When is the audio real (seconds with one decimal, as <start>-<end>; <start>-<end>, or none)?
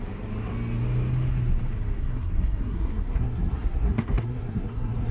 0.0-2.0